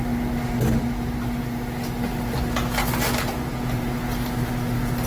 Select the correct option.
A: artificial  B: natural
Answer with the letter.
B